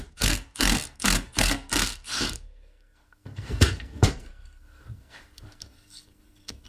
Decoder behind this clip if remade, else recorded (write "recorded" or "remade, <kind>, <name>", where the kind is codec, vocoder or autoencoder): remade, codec, SNAC